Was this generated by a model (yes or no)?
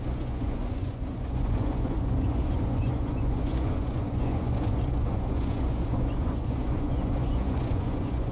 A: yes